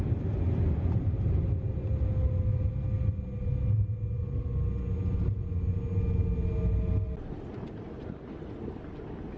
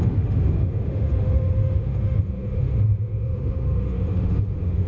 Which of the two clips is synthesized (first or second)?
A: second